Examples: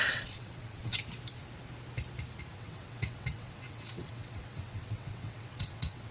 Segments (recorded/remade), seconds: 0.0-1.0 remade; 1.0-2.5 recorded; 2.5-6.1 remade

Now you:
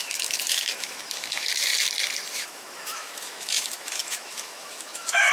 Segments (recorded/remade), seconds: 0.0-1.7 remade; 1.7-2.3 recorded; 2.3-5.3 remade

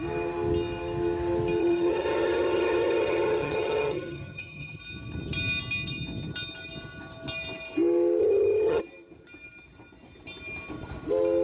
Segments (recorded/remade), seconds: 0.0-1.6 recorded; 1.6-4.8 remade; 4.8-8.2 recorded; 8.2-8.8 remade; 8.8-11.4 recorded

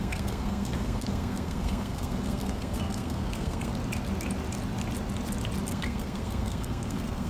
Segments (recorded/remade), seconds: 0.0-3.7 remade; 3.7-5.7 recorded; 5.7-7.3 remade

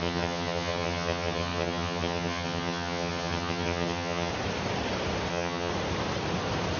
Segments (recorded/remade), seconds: 0.0-4.3 remade; 4.3-5.3 recorded; 5.3-5.7 remade; 5.7-6.8 recorded